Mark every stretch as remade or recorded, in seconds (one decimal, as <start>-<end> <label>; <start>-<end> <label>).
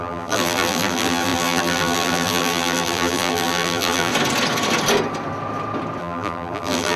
0.0-4.1 remade; 4.1-6.0 recorded; 6.0-7.0 remade